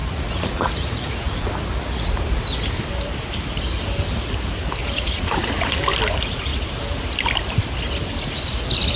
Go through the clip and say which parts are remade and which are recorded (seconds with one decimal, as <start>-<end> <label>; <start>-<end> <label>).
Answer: 0.0-1.5 remade; 1.5-4.8 recorded; 4.8-5.8 remade; 5.8-9.0 recorded

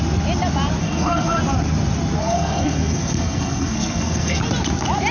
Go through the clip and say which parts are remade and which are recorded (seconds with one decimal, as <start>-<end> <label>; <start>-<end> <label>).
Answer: 0.0-0.8 recorded; 0.8-1.4 remade; 1.4-2.2 recorded; 2.2-4.4 remade; 4.4-5.1 recorded